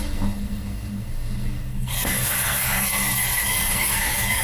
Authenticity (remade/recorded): remade